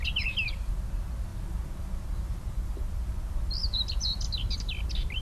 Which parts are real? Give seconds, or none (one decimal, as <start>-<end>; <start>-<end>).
0.0-3.6; 4.2-5.2